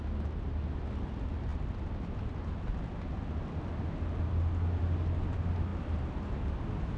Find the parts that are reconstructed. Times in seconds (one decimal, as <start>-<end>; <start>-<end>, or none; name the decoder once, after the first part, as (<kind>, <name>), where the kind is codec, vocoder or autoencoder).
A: none